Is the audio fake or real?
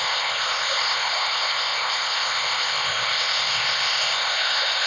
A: fake